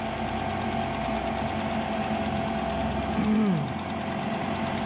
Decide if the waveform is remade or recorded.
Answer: recorded